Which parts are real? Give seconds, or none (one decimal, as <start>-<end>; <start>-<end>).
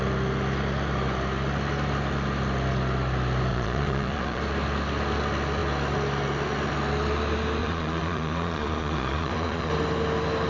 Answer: 0.0-3.5; 4.4-7.6; 9.7-10.5